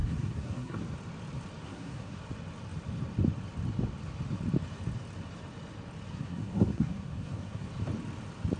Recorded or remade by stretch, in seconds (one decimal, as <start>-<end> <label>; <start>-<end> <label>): 0.0-0.8 remade; 0.8-1.6 recorded; 1.6-2.2 remade; 2.2-6.1 recorded; 6.1-7.7 remade; 7.7-8.6 recorded